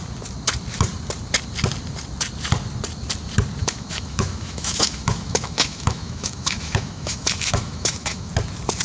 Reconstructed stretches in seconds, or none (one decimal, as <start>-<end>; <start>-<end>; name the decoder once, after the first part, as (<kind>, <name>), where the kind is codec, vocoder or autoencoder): 3.6-8.3 (autoencoder, DAC-VAE)